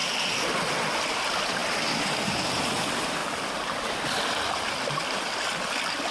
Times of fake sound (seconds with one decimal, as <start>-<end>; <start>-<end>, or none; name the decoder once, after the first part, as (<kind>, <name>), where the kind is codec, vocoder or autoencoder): 1.0-1.6 (vocoder, BigVGAN v2); 2.5-3.2; 4.2-6.1